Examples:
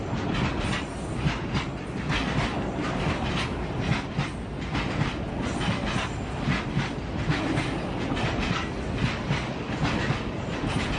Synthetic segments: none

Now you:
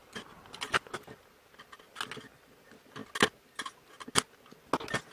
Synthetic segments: none